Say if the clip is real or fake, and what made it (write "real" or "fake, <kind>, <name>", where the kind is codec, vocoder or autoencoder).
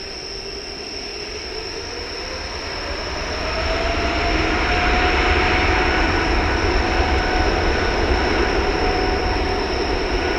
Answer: real